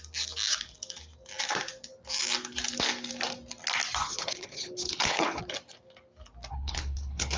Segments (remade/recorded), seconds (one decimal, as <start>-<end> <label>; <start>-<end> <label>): 0.0-4.0 recorded; 4.0-5.4 remade; 5.4-6.5 recorded; 6.5-7.4 remade